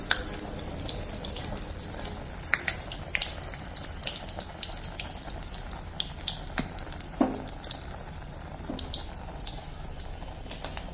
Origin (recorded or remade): recorded